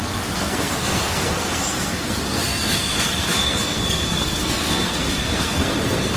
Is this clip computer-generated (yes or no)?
yes